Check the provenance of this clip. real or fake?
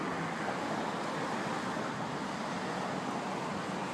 real